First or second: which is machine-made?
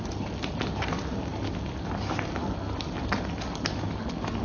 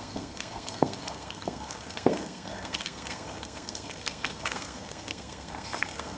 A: second